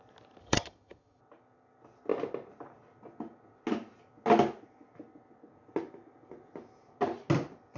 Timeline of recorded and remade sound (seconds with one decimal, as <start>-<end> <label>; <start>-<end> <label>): 0.0-0.4 recorded; 0.4-1.2 remade; 1.2-7.8 recorded